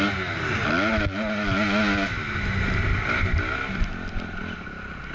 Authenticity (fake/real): real